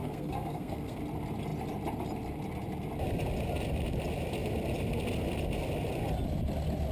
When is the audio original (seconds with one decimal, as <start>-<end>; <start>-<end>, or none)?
1.0-6.9